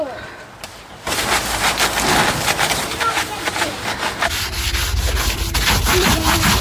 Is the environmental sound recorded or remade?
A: recorded